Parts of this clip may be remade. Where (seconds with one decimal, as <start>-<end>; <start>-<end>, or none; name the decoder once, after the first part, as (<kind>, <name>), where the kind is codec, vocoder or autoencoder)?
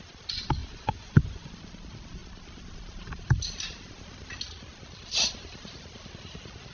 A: 0.6-1.5 (vocoder, Vocos)